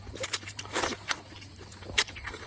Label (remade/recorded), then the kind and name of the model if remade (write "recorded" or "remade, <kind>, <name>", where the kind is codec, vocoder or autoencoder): remade, vocoder, BigVGAN v2